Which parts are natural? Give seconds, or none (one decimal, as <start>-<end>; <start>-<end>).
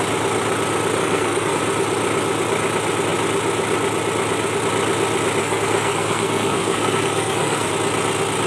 0.0-1.0; 1.6-5.4; 7.7-8.5